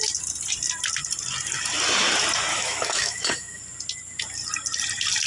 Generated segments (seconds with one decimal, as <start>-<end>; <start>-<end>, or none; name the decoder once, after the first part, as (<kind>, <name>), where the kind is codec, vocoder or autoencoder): 2.5-3.6 (autoencoder, DAC-VAE)